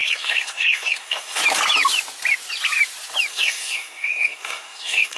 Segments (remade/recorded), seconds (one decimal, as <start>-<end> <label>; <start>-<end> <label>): 0.0-1.4 remade; 1.4-3.3 recorded; 3.3-5.2 remade